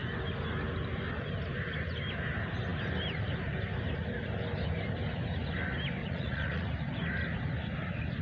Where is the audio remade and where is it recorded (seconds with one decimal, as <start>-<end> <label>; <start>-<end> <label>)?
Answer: 0.0-6.0 recorded; 6.0-6.7 remade; 6.7-8.2 recorded